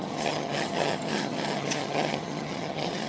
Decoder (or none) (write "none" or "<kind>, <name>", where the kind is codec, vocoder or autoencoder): vocoder, HiFi-GAN